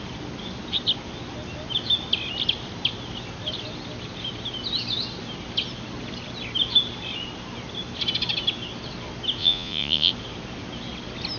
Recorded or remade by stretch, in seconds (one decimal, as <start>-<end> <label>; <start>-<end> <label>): 0.0-9.4 recorded; 9.4-10.1 remade; 10.1-11.4 recorded